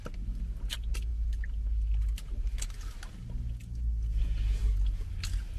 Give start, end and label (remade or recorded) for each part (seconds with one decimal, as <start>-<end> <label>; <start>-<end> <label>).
0.0-5.6 recorded